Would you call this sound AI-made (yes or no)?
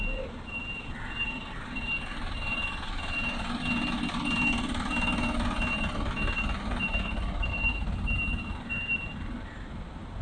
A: no